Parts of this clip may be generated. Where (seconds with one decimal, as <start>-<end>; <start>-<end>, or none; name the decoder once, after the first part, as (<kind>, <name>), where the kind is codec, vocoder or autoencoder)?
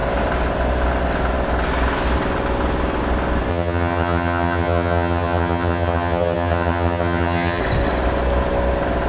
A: 3.5-7.6 (vocoder, HiFi-GAN)